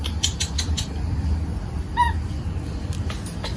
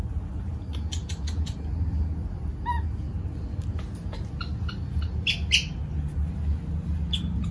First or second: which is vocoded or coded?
first